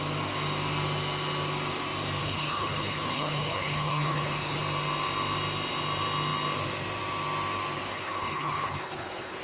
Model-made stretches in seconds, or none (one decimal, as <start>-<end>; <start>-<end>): 2.2-4.6; 7.9-9.4